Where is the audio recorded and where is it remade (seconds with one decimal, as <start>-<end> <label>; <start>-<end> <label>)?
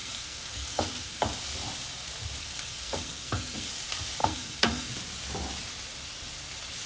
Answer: 0.0-1.2 remade; 1.2-2.4 recorded; 2.4-3.7 remade; 3.7-4.2 recorded; 4.2-4.9 remade; 4.9-6.9 recorded